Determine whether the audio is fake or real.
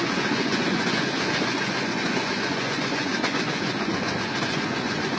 fake